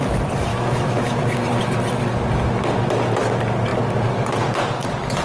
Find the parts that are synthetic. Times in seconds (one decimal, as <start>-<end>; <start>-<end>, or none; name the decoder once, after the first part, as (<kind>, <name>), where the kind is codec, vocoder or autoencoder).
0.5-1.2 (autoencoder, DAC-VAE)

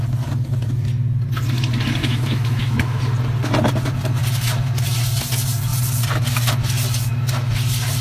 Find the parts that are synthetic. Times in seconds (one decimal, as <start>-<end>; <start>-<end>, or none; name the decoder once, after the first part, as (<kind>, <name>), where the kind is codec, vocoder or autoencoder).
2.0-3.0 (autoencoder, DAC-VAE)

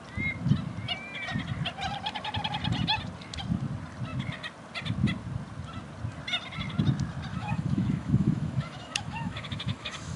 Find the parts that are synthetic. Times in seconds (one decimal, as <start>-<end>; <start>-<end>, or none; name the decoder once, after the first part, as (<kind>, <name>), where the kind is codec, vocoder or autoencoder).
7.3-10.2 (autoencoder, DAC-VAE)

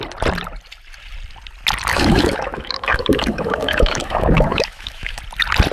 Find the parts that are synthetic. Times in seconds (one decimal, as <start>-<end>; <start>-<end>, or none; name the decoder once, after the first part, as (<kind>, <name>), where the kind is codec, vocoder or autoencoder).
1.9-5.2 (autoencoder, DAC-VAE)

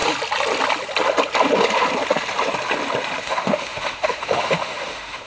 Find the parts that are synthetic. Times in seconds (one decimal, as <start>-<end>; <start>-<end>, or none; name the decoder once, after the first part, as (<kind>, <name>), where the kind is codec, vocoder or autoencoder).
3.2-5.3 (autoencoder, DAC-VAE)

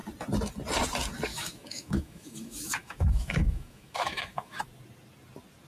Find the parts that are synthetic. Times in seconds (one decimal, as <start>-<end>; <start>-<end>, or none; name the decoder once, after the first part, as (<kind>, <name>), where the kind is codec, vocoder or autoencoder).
1.3-4.6 (autoencoder, DAC-VAE)

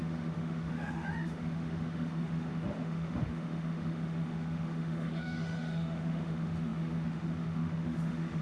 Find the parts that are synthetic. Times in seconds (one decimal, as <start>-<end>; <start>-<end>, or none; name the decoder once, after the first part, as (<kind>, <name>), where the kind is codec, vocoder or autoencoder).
0.0-8.4 (autoencoder, DAC-VAE)

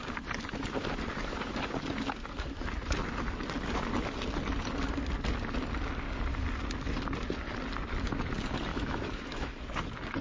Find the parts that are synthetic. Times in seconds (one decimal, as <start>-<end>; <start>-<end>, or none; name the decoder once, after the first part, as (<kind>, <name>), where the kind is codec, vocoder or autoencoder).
8.7-9.7 (autoencoder, DAC-VAE)